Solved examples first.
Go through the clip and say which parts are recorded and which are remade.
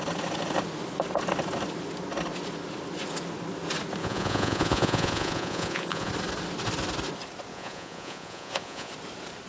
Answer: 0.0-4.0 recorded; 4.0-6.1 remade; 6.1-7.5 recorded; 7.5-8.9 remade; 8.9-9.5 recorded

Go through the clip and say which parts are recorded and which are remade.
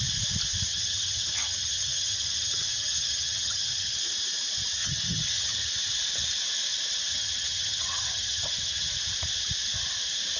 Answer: 0.0-0.7 recorded; 0.7-4.0 remade; 4.0-4.8 recorded; 4.8-5.7 remade; 5.7-7.1 recorded; 7.1-8.9 remade; 8.9-10.4 recorded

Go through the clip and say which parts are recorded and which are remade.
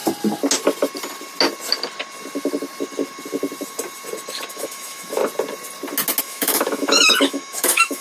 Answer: 0.0-4.5 recorded; 4.5-5.2 remade; 5.2-6.2 recorded; 6.2-8.0 remade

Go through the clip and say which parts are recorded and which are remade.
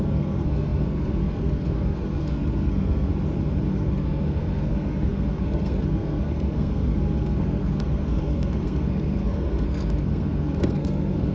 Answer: 0.0-3.1 remade; 3.1-3.7 recorded; 3.7-11.3 remade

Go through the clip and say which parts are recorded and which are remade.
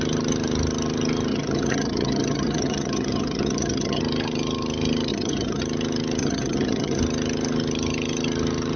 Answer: 0.0-1.3 recorded; 1.3-4.0 remade; 4.0-5.1 recorded; 5.1-5.6 remade; 5.6-6.2 recorded; 6.2-7.0 remade; 7.0-8.8 recorded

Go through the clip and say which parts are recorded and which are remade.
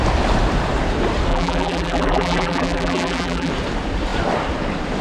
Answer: 0.0-1.3 recorded; 1.3-3.5 remade; 3.5-5.0 recorded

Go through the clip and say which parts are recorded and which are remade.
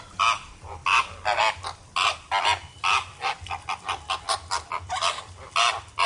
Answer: 0.0-6.1 recorded